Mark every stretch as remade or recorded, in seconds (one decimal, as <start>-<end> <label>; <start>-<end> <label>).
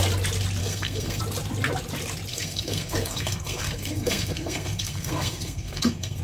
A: 0.0-0.6 recorded; 0.6-1.2 remade; 1.2-2.3 recorded; 2.3-6.2 remade